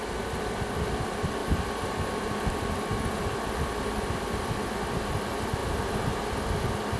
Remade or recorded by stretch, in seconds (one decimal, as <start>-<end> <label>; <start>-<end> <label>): 0.0-1.4 recorded; 1.4-2.5 remade; 2.5-5.6 recorded; 5.6-6.2 remade; 6.2-7.0 recorded